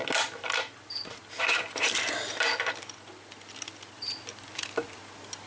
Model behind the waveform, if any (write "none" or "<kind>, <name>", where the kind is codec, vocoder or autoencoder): none